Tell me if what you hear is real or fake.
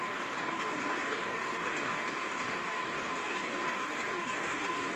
fake